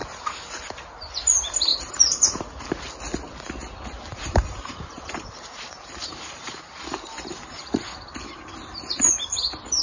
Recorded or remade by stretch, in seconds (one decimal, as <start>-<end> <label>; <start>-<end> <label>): 0.0-0.6 remade; 0.6-1.7 recorded; 1.7-2.4 remade; 2.4-4.1 recorded; 4.1-8.5 remade; 8.5-9.8 recorded